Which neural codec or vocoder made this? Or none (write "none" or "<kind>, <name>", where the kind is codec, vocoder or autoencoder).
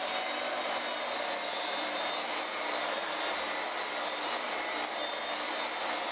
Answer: none